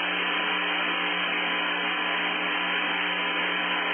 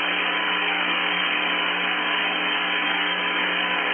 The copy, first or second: second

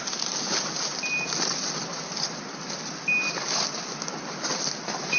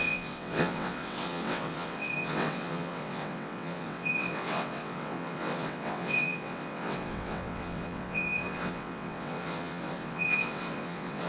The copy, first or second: second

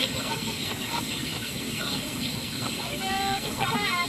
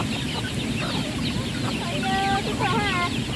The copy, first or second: first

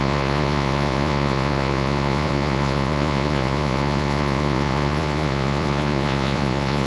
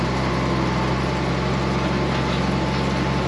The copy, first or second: first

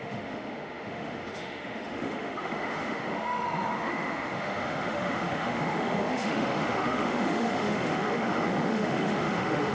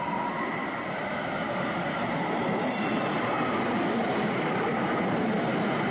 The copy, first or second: first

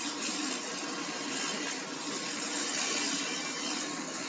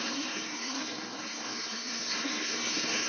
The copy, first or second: second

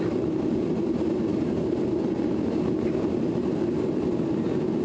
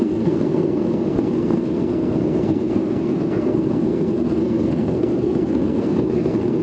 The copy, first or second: second